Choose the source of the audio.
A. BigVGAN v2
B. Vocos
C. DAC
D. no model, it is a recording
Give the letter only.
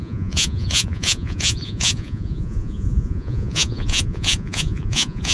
B